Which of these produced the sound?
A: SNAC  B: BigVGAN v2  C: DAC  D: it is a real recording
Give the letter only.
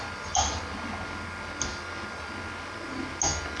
D